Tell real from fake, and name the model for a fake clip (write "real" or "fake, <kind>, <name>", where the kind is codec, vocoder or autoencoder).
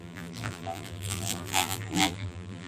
fake, vocoder, BigVGAN v2